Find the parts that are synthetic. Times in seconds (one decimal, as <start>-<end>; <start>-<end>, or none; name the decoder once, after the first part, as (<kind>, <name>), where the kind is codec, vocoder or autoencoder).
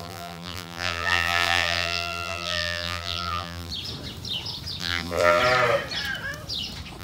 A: 0.0-3.7 (vocoder, BigVGAN v2); 4.8-5.4